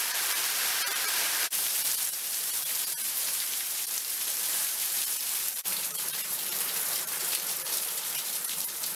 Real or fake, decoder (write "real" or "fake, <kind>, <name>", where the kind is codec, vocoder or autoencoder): fake, vocoder, BigVGAN v2